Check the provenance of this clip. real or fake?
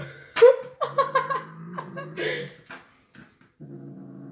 real